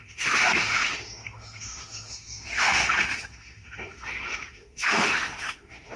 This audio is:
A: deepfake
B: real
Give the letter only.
A